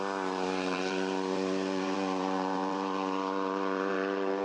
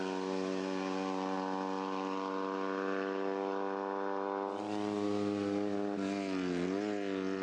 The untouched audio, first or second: second